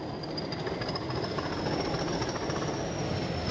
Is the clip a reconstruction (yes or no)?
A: no